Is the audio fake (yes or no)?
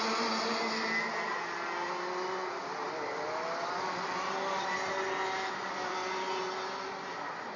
no